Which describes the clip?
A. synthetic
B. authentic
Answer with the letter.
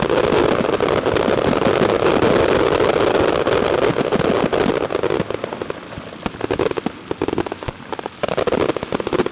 B